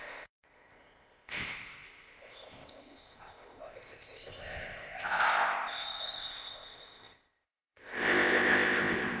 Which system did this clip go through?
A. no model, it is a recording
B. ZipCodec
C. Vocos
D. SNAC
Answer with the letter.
B